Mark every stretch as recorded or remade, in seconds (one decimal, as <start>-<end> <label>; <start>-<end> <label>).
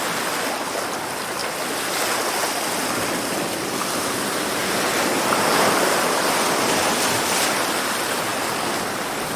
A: 0.0-4.6 recorded; 4.6-6.4 remade; 6.4-8.3 recorded; 8.3-9.4 remade